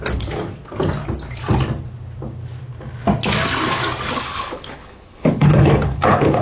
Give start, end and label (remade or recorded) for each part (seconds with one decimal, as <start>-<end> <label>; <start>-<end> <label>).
0.0-0.4 remade; 0.4-4.2 recorded; 4.2-6.4 remade